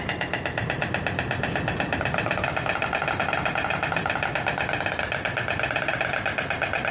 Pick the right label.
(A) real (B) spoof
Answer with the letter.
A